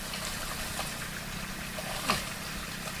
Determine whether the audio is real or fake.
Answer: real